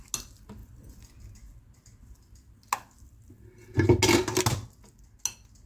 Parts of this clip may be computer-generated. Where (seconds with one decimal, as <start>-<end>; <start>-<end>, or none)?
none